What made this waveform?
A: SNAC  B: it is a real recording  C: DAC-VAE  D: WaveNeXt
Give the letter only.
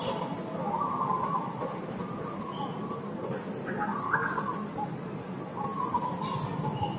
B